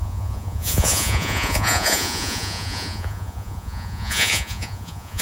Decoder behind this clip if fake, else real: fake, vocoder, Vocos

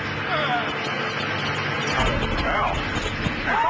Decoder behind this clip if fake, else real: real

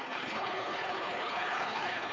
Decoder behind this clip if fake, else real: fake, codec, HILCodec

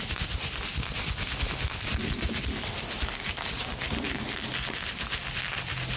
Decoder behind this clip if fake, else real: real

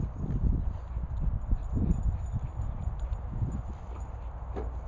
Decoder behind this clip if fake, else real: real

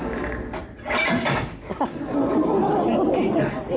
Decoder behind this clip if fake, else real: real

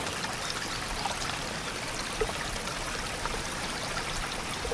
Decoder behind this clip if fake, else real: real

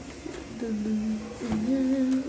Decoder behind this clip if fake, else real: real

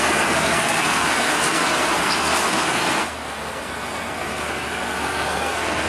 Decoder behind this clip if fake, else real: fake, codec, SNAC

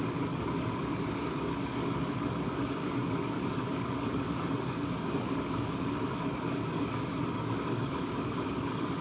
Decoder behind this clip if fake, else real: fake, codec, DAC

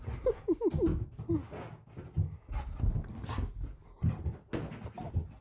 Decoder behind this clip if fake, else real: real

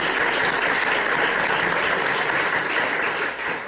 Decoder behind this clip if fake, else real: real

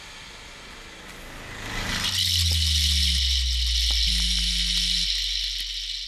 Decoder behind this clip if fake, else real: real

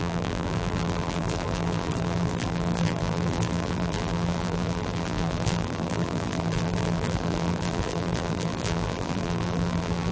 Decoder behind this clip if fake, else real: fake, vocoder, BigVGAN v2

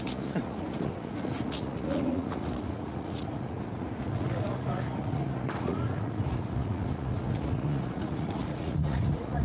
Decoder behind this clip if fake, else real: fake, vocoder, Vocos